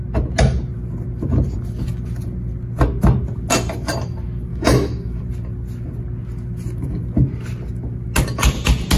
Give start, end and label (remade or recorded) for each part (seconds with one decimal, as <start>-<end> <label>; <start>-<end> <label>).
0.0-4.5 recorded; 4.5-5.2 remade; 5.2-9.0 recorded